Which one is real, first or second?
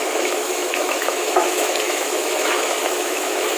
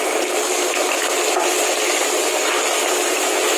second